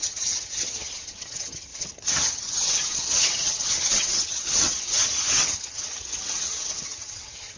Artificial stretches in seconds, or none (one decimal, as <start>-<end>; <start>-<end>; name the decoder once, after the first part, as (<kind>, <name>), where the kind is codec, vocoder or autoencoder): 0.0-7.6 (vocoder, HiFi-GAN)